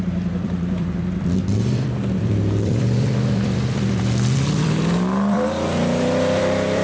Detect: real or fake fake